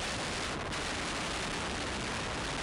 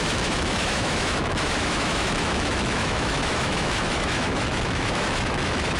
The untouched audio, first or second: first